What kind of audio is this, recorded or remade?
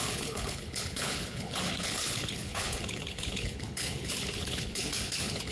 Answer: remade